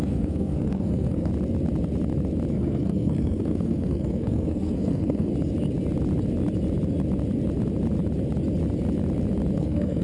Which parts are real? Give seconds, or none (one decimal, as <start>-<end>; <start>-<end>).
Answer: 1.3-2.5; 5.3-9.6